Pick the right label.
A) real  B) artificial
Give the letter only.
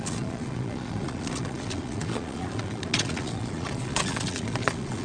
B